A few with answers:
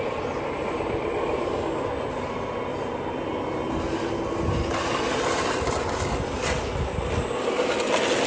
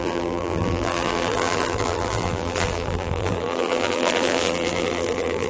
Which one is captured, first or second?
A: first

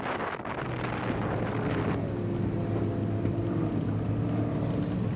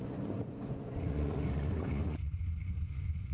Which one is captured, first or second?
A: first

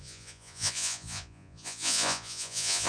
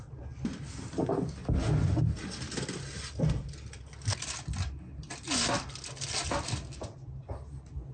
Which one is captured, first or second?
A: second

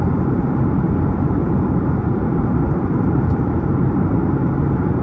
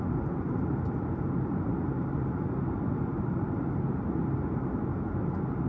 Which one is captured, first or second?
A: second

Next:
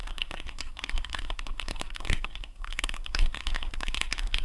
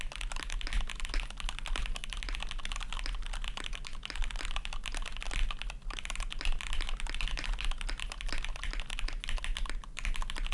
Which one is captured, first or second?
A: second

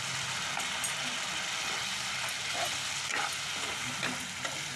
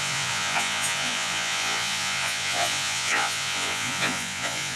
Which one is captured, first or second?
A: first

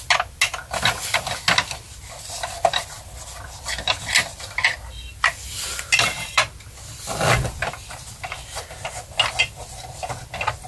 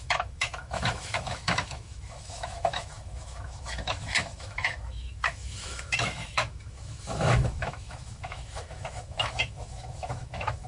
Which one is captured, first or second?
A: first